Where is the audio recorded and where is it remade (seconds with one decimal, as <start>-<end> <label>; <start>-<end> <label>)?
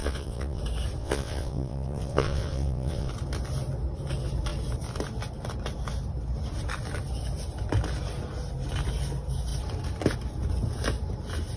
0.0-0.6 remade; 0.6-1.0 recorded; 1.0-3.1 remade; 3.1-11.6 recorded